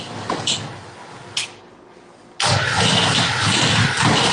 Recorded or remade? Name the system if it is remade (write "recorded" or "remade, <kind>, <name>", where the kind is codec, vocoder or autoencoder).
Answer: recorded